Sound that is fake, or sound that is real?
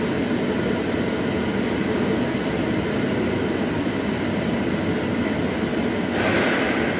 real